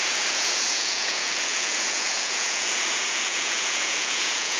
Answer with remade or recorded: remade